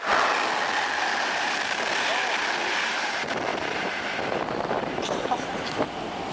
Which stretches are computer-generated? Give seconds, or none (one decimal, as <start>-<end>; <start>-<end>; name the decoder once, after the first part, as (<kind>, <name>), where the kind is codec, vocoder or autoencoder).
3.5-5.8 (vocoder, BigVGAN v2)